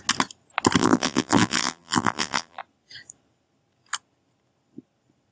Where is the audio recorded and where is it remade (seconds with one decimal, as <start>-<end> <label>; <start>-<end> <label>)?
0.0-0.8 recorded; 0.8-2.6 remade; 2.6-5.3 recorded

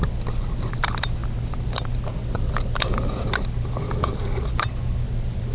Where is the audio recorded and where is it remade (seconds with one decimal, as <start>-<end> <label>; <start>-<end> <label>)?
0.0-5.5 recorded

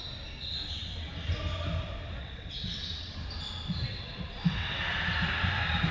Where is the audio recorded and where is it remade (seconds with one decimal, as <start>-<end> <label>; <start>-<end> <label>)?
0.0-2.2 recorded; 2.2-3.1 remade; 3.1-3.9 recorded; 3.9-4.8 remade; 4.8-5.9 recorded